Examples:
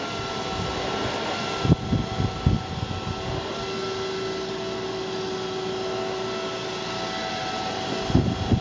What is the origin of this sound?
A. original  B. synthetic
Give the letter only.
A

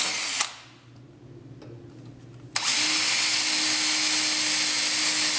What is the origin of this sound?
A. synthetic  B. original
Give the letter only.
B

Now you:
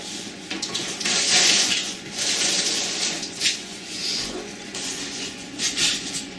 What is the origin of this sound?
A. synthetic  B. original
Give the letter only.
A